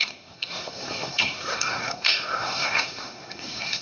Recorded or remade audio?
remade